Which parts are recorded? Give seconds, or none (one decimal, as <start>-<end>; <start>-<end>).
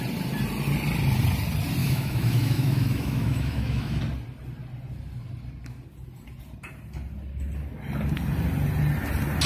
0.0-1.8; 4.0-9.5